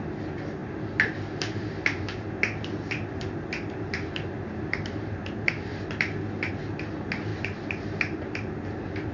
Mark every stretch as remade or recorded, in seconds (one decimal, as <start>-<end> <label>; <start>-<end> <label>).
0.0-9.1 recorded